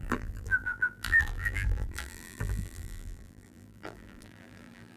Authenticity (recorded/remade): remade